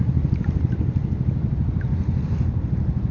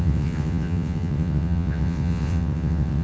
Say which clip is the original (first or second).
first